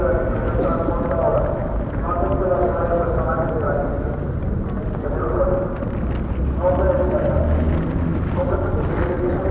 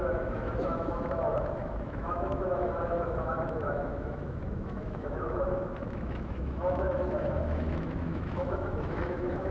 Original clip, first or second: first